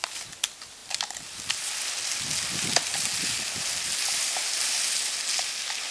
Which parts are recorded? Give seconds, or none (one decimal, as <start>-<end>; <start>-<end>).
0.0-5.9